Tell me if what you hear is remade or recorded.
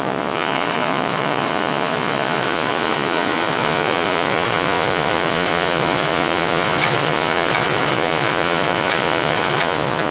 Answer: remade